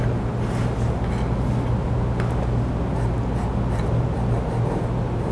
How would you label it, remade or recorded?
recorded